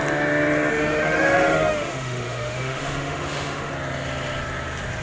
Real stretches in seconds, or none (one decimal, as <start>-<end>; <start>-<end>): 0.0-0.7; 3.7-5.0